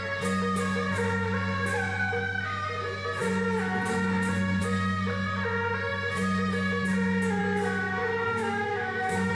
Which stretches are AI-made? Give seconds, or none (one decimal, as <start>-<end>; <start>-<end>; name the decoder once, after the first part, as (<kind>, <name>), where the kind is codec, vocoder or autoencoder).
8.0-9.3 (autoencoder, DAC-VAE)